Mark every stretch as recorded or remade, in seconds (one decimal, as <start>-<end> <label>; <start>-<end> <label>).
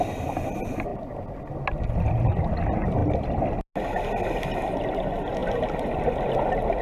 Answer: 0.0-6.8 recorded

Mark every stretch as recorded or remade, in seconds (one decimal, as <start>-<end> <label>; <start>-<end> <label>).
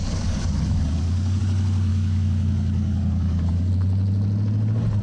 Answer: 0.0-1.4 remade; 1.4-1.9 recorded; 1.9-3.7 remade; 3.7-5.0 recorded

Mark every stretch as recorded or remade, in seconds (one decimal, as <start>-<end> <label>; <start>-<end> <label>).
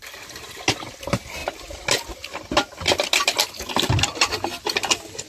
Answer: 0.0-5.3 recorded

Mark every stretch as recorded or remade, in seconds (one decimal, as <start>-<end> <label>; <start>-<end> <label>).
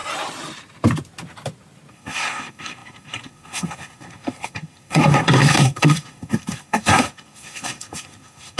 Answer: 0.0-1.9 recorded; 1.9-8.6 remade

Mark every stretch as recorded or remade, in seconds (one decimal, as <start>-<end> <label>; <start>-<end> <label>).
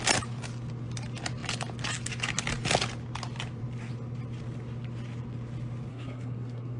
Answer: 0.0-5.9 recorded; 5.9-6.8 remade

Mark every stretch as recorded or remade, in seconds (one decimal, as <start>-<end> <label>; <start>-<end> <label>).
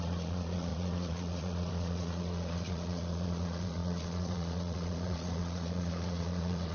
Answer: 0.0-6.7 remade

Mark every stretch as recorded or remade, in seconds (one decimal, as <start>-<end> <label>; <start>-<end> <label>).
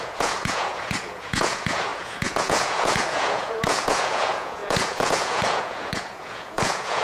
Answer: 0.0-7.0 remade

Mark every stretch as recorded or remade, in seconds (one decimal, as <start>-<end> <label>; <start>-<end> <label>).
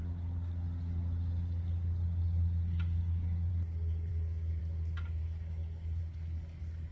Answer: 0.0-4.1 recorded; 4.1-4.6 remade; 4.6-5.2 recorded; 5.2-6.0 remade; 6.0-6.9 recorded